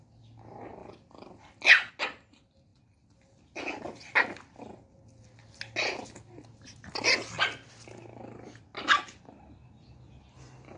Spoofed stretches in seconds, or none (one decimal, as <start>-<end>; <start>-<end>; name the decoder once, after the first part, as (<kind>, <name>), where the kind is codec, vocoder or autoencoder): none